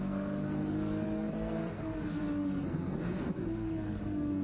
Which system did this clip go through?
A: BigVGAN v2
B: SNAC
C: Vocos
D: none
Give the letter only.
B